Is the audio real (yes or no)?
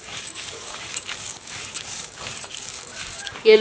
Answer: no